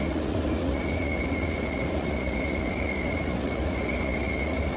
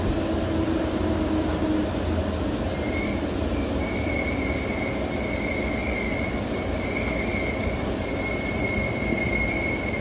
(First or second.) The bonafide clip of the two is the second